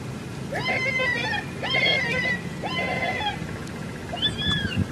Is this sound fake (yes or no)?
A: yes